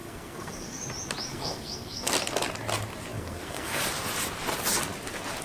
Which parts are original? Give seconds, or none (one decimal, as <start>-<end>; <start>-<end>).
0.8-1.3; 2.1-3.1; 3.8-5.4